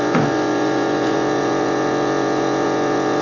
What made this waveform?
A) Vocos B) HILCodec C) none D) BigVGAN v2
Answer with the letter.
A